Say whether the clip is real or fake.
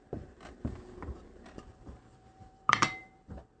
fake